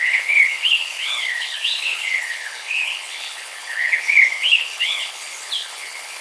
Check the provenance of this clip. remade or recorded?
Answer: remade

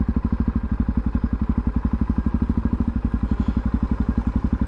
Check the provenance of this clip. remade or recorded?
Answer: recorded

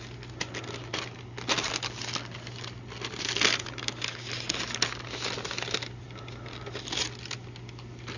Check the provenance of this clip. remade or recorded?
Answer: recorded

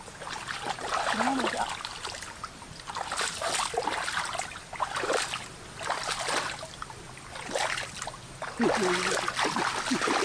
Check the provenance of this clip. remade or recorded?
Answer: recorded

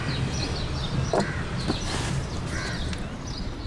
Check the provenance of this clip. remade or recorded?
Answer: recorded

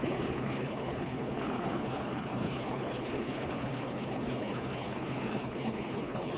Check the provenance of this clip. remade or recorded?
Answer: remade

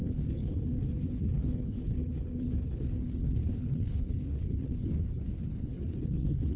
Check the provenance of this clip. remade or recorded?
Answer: remade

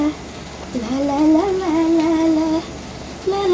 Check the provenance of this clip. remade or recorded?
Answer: recorded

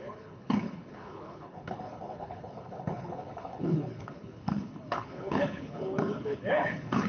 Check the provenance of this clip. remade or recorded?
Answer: remade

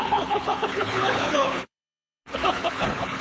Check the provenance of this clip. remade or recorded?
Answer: remade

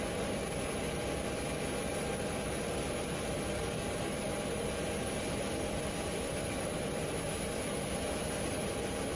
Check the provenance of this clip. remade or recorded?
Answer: recorded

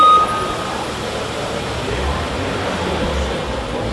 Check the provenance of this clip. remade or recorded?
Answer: recorded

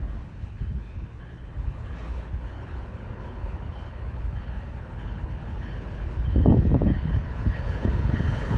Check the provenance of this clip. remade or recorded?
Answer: remade